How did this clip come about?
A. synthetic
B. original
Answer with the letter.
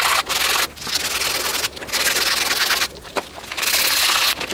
B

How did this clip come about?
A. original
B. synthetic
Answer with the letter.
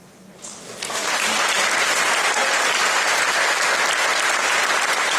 A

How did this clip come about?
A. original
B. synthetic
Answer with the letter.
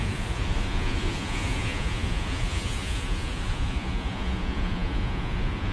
B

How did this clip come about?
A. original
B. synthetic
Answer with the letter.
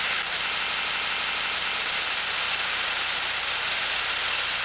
A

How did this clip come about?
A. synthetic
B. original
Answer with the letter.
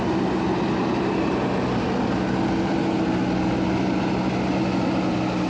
B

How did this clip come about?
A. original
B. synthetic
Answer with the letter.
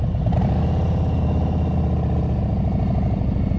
A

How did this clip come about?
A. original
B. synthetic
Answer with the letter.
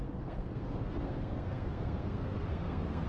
B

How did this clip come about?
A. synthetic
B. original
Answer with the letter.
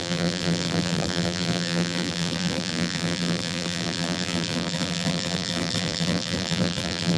A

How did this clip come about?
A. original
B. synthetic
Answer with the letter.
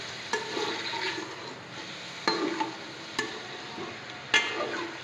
A